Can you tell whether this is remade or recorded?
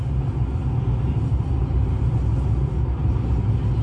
recorded